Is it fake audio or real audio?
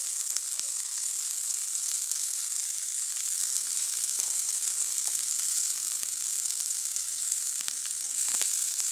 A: fake